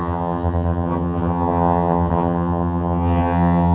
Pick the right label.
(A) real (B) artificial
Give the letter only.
B